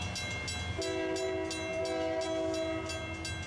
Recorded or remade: recorded